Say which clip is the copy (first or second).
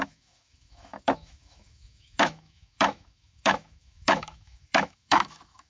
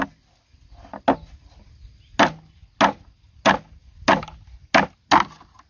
first